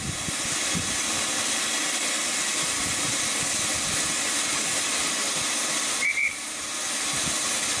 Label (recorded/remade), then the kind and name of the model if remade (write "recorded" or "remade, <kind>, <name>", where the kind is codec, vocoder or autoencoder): recorded